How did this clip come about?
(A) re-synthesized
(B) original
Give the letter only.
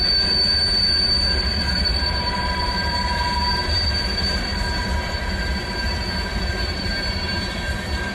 A